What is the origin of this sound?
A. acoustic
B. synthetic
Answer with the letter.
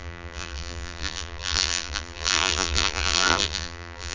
B